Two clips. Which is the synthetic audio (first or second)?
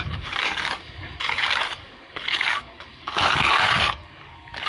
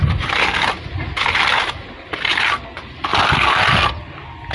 first